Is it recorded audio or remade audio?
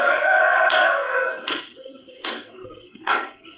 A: remade